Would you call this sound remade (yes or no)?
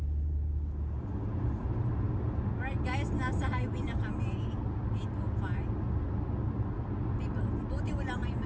no